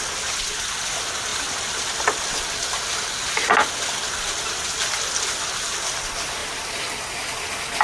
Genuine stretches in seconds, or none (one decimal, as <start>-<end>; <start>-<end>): 0.0-7.8